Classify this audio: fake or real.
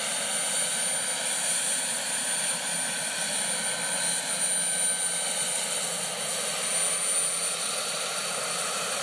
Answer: real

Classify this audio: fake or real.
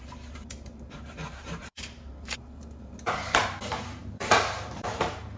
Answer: fake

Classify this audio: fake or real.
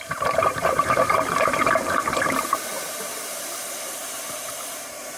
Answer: fake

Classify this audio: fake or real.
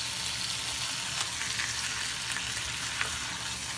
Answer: real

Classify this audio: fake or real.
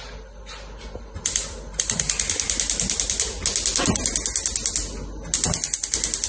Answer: real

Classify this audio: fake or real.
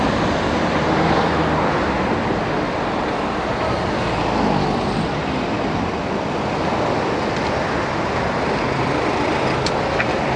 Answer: real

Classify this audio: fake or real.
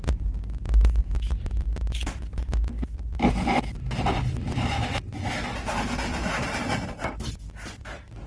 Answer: real